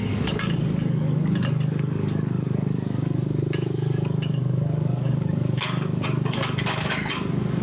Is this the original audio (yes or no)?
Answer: no